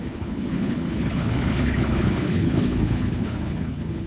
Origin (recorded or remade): remade